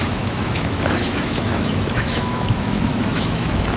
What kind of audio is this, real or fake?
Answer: fake